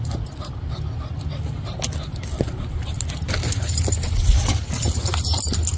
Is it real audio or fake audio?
real